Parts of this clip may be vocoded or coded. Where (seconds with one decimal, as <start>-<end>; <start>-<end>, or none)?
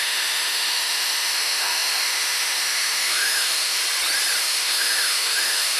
0.0-3.8; 4.4-5.8